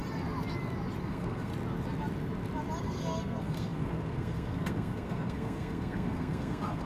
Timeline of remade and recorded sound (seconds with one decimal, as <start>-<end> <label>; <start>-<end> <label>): 0.0-1.0 recorded; 1.0-1.5 remade; 1.5-2.8 recorded; 2.8-6.9 remade